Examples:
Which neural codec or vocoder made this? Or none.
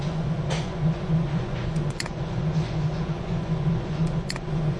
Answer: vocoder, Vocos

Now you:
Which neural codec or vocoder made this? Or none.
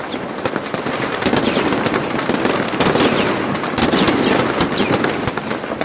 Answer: none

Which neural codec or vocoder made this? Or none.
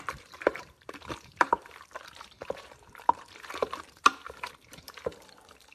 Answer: vocoder, BigVGAN v2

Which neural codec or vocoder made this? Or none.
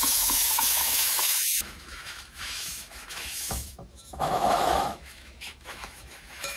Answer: autoencoder, DAC-VAE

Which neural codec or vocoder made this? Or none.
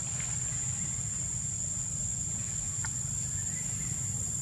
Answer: none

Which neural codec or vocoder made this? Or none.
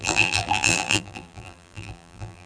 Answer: vocoder, BigVGAN v2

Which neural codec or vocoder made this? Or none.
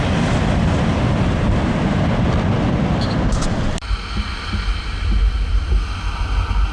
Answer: none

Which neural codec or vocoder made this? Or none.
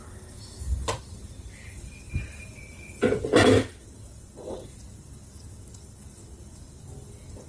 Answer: vocoder, BigVGAN v2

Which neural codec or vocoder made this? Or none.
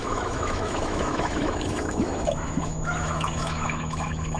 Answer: autoencoder, DAC-VAE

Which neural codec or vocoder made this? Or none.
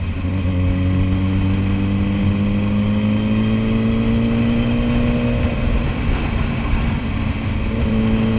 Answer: none